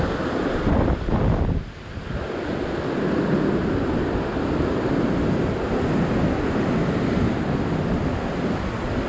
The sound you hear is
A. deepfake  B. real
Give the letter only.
B